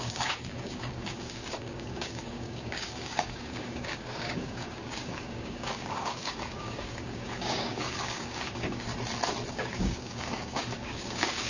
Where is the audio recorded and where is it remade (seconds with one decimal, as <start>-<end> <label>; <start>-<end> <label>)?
0.0-8.9 remade; 8.9-9.5 recorded; 9.5-11.5 remade